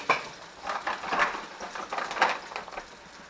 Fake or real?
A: real